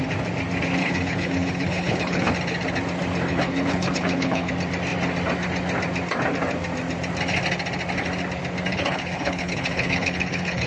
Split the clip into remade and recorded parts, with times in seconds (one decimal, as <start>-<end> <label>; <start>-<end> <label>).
0.0-0.8 recorded; 0.8-2.3 remade; 2.3-3.3 recorded; 3.3-4.5 remade; 4.5-8.7 recorded; 8.7-10.7 remade